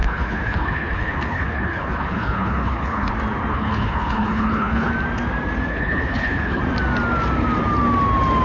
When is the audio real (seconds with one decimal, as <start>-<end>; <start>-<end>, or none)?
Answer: 3.1-3.5; 4.9-5.7; 6.6-8.4